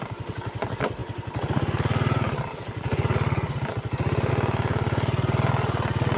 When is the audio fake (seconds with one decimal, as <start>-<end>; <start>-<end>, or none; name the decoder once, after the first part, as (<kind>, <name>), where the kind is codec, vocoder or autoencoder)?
none